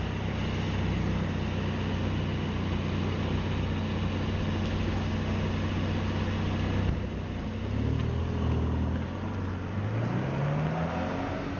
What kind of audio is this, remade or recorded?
recorded